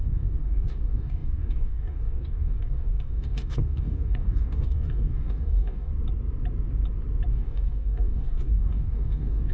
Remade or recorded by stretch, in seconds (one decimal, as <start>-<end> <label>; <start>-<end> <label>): 0.0-5.9 remade; 5.9-7.3 recorded; 7.3-9.5 remade